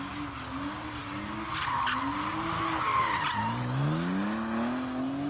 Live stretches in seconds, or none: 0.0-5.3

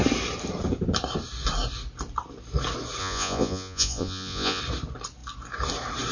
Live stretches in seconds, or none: 0.0-3.0; 4.6-6.1